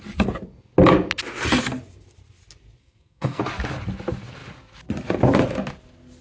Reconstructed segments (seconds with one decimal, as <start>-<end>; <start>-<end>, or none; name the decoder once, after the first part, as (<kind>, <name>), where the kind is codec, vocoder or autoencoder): 2.8-3.4 (codec, SNAC)